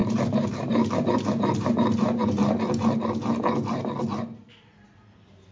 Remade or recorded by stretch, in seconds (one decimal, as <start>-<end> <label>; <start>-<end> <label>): 0.0-1.1 remade; 1.1-5.5 recorded